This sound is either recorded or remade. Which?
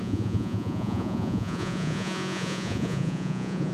remade